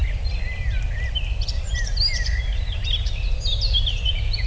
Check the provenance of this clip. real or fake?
real